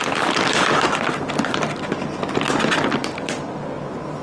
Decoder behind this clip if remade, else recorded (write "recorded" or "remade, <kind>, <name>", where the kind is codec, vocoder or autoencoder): recorded